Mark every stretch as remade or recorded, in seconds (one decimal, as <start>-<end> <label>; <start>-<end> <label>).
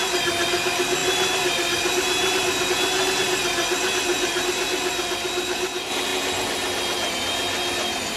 0.0-4.1 recorded; 4.1-4.7 remade; 4.7-8.2 recorded